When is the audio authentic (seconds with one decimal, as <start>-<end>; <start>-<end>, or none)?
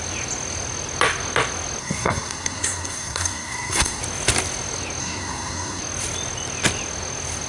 0.0-1.8; 4.0-5.0; 5.8-7.5